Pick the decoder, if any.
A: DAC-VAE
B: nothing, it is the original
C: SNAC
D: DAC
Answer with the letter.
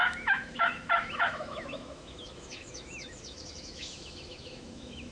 A